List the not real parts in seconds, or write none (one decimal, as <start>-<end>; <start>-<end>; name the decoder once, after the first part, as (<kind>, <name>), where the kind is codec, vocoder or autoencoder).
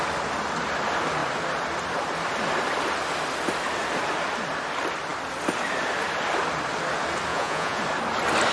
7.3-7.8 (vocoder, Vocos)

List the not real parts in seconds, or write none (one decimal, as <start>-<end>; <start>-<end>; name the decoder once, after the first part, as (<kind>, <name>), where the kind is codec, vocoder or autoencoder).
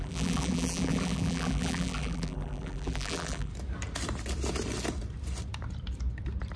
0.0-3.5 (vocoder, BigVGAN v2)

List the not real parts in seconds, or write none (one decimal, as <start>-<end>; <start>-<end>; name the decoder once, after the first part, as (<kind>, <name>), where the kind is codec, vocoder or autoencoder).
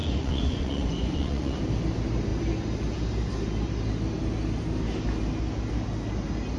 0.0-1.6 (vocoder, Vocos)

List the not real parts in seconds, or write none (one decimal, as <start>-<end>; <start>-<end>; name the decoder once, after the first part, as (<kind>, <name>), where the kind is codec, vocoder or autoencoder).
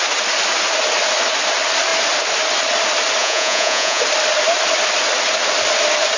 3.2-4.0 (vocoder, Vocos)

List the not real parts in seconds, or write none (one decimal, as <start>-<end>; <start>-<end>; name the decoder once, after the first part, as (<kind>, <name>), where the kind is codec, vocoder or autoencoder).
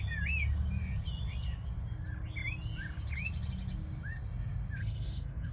4.8-5.5 (codec, SNAC)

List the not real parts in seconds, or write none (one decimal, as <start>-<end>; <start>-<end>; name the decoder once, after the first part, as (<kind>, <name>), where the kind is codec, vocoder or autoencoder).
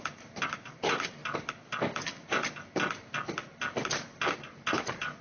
0.0-1.2 (vocoder, BigVGAN v2); 4.3-5.2